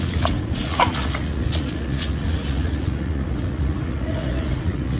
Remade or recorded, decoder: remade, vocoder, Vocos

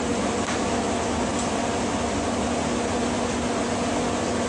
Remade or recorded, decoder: recorded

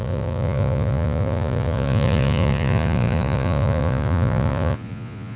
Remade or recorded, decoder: remade, vocoder, Vocos